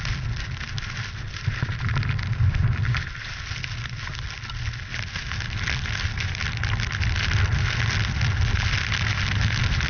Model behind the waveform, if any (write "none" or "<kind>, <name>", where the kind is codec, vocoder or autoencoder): none